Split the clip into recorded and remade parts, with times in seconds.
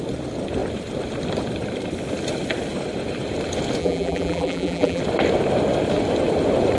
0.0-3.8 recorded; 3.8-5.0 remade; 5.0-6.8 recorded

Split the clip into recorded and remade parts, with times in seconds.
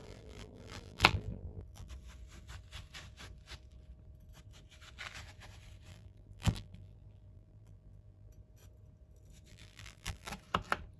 0.0-1.9 remade; 1.9-5.9 recorded; 5.9-8.3 remade; 8.3-9.5 recorded; 9.5-10.3 remade; 10.3-11.0 recorded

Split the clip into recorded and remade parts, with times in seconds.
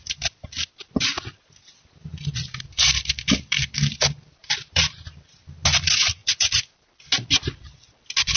0.0-0.7 remade; 0.7-2.1 recorded; 2.1-4.9 remade; 4.9-6.2 recorded; 6.2-6.8 remade; 6.8-8.4 recorded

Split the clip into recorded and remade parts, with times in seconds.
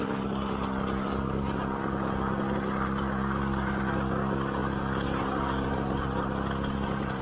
0.0-4.6 recorded; 4.6-7.2 remade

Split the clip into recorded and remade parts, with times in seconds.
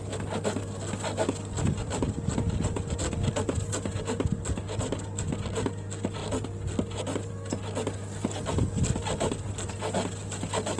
0.0-10.8 recorded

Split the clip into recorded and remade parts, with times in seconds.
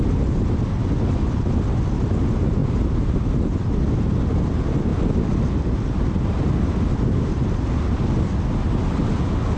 0.0-2.6 recorded; 2.6-3.3 remade; 3.3-4.9 recorded; 4.9-6.6 remade; 6.6-9.6 recorded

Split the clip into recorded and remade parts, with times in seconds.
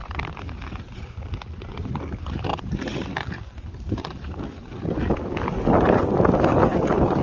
0.0-0.6 remade; 0.6-2.5 recorded; 2.5-4.4 remade; 4.4-7.2 recorded